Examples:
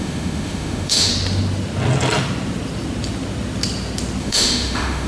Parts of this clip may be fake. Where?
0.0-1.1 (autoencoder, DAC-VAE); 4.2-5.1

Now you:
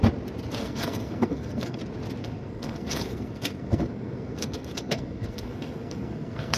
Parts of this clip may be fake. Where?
0.6-1.8 (codec, SNAC); 2.2-6.6

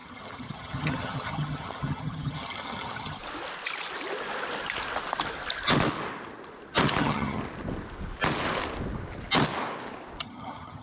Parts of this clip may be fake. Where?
0.0-3.2 (vocoder, HiFi-GAN); 7.0-7.4; 10.2-10.8

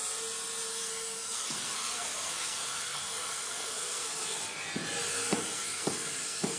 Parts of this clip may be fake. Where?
0.7-4.4 (codec, SNAC); 5.1-6.6

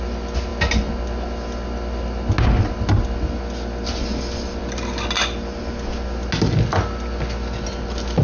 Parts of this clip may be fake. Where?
none

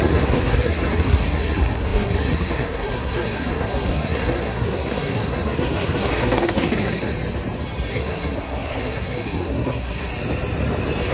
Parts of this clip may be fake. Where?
0.0-7.1 (codec, SNAC); 7.9-10.1